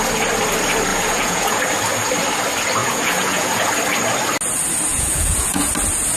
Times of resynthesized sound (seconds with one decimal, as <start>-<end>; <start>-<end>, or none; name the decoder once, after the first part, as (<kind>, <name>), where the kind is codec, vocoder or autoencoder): 0.9-1.6 (vocoder, Vocos); 2.8-3.7; 4.9-5.7